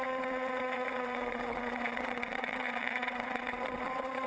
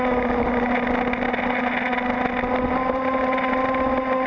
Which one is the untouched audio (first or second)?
second